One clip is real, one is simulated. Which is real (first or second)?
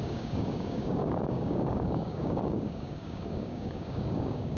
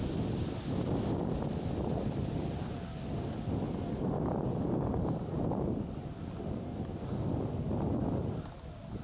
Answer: second